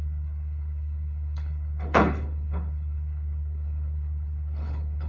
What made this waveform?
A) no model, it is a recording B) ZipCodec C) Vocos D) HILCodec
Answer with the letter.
D